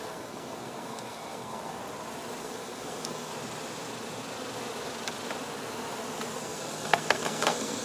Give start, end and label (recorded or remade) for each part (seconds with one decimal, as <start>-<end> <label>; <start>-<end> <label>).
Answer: 0.0-1.8 remade; 1.8-2.4 recorded; 2.4-3.3 remade; 3.3-6.4 recorded; 6.4-7.8 remade